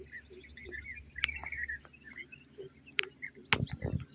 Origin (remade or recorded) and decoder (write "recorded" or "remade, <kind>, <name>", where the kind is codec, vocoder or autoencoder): recorded